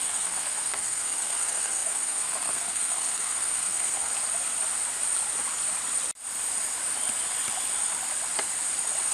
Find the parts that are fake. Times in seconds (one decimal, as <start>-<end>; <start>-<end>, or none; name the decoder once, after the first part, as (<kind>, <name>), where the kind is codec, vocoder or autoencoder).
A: 0.0-4.1 (codec, SNAC)